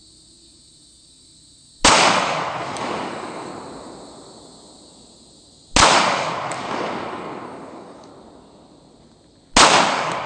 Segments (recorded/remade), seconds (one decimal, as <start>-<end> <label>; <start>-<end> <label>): 0.0-1.9 recorded; 1.9-3.5 remade; 3.5-5.9 recorded; 5.9-8.1 remade; 8.1-9.9 recorded; 9.9-10.3 remade

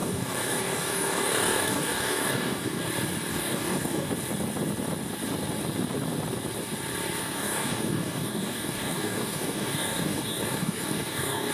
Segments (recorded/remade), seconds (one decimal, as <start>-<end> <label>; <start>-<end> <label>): 0.0-2.9 remade; 2.9-3.3 recorded; 3.3-4.1 remade; 4.1-7.2 recorded; 7.2-11.5 remade

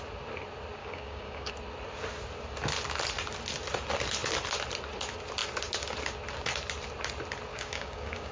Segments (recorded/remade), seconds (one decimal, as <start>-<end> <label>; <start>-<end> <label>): 0.0-0.8 recorded; 0.8-1.5 remade; 1.5-7.5 recorded; 7.5-8.3 remade

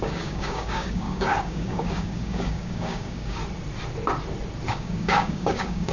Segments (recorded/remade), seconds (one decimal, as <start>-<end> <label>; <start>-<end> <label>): 0.0-3.4 remade; 3.4-4.7 recorded; 4.7-5.9 remade

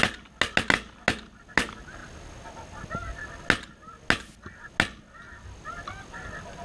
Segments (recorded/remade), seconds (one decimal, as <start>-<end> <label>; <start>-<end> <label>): 0.0-6.6 recorded